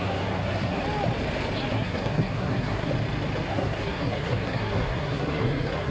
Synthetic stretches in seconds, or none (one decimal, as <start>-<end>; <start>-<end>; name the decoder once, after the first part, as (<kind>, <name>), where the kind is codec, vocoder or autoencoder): 0.0-0.8 (codec, SNAC); 1.7-2.9; 3.5-5.9